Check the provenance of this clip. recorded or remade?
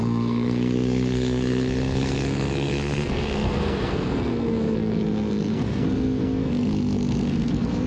remade